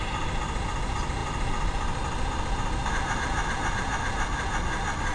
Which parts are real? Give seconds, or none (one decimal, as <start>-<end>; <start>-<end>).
0.0-5.1